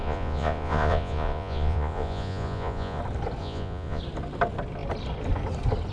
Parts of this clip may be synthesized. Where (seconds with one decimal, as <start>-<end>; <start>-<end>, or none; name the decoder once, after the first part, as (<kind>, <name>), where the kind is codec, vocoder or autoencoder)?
0.0-3.0 (vocoder, Vocos); 3.4-4.0